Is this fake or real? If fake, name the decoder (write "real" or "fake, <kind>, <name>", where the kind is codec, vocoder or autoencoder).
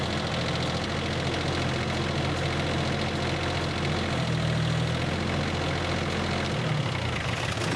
real